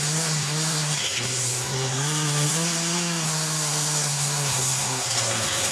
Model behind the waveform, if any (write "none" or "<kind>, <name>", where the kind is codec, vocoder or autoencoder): codec, SNAC